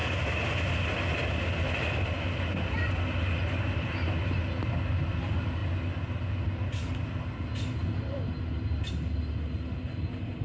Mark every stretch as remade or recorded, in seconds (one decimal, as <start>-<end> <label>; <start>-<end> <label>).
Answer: 0.0-10.4 recorded